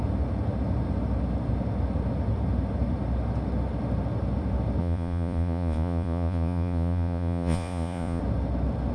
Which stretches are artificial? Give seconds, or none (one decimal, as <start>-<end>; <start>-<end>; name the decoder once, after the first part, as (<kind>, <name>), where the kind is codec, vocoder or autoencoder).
4.8-8.2 (vocoder, Vocos)